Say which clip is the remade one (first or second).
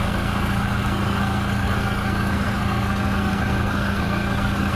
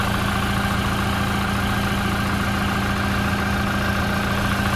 first